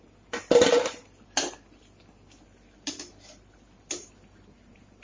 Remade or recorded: recorded